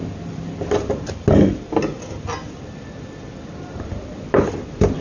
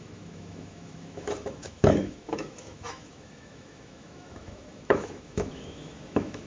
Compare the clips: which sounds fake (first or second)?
second